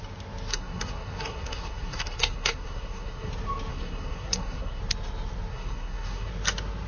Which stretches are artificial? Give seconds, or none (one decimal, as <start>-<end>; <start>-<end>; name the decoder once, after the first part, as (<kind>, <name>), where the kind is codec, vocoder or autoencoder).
0.5-3.3 (codec, SNAC); 3.7-4.8; 5.5-6.3